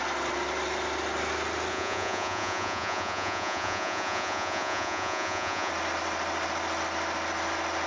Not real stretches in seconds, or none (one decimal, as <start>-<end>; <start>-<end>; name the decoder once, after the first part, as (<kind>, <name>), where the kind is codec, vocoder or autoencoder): 1.7-5.7 (vocoder, Vocos)